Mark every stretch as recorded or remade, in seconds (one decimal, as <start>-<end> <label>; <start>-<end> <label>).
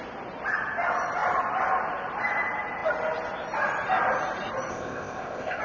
0.0-4.7 recorded; 4.7-5.6 remade